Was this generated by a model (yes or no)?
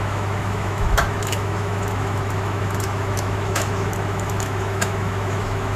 yes